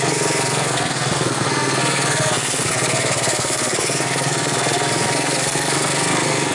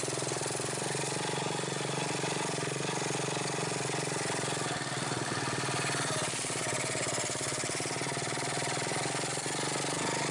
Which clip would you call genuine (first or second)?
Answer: second